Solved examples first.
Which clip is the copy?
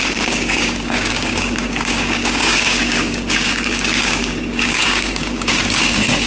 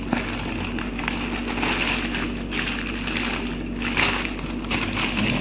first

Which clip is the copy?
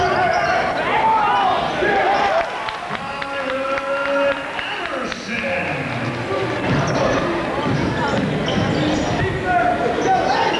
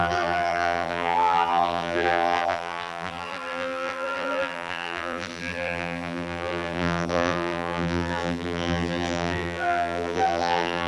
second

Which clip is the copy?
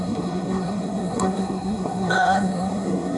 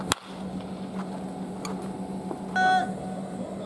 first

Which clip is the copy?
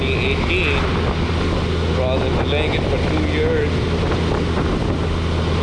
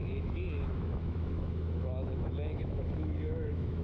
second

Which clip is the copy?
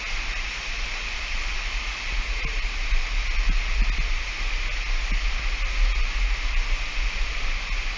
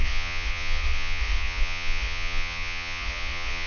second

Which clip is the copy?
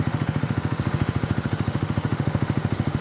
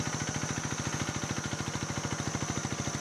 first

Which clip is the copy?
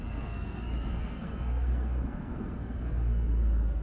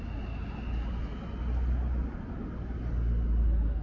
first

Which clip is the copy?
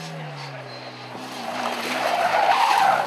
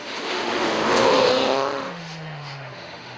second